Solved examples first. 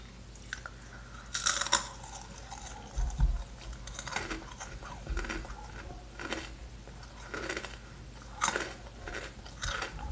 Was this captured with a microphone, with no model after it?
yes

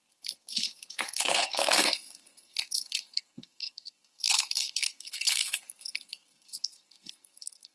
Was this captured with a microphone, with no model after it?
no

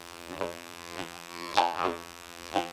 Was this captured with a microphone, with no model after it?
no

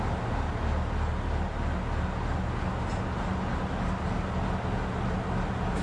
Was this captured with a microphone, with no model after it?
yes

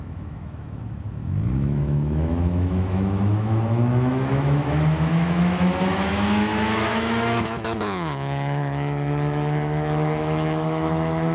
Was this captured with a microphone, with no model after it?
no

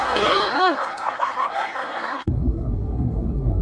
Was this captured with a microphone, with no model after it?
no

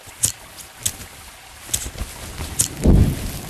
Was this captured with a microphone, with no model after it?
yes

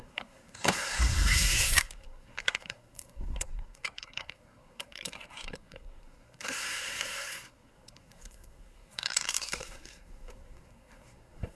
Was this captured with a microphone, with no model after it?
no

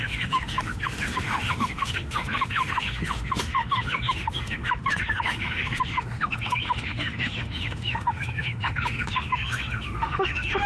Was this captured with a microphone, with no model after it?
no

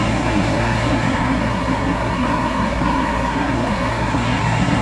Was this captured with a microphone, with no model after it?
no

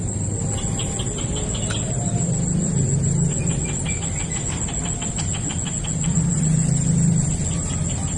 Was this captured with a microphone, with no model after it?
yes